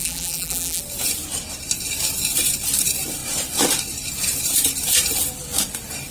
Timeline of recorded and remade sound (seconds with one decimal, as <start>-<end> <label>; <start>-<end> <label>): 0.0-0.8 remade; 0.8-6.1 recorded